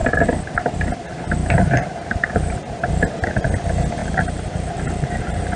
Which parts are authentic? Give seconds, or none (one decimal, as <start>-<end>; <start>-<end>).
0.0-1.4; 2.8-4.0